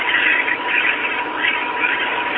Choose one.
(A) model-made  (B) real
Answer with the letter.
B